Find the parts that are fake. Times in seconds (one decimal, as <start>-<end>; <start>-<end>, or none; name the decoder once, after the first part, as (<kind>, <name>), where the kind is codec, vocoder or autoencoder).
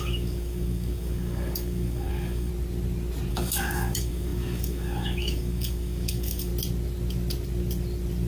0.0-2.5 (codec, DAC); 3.3-6.5